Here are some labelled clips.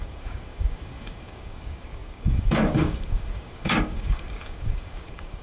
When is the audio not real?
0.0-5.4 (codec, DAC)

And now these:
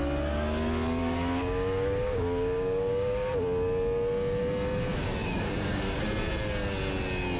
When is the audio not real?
1.0-3.3 (codec, DAC); 5.2-6.0

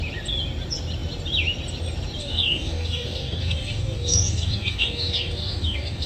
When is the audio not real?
2.2-6.1 (codec, DAC)

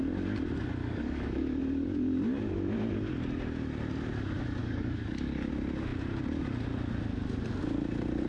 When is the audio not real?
0.8-1.6 (codec, DAC); 4.6-5.5

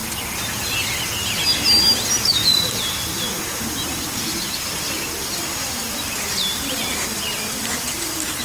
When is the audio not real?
none

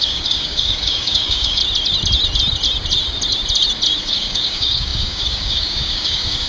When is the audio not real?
0.0-1.6 (codec, DAC); 4.0-6.5

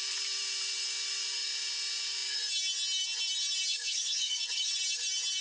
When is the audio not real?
3.7-4.7 (codec, DAC)